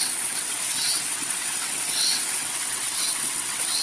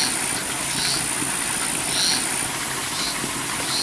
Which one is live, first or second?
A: second